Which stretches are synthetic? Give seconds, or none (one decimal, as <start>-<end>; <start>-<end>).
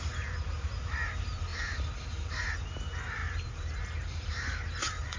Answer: 0.0-5.2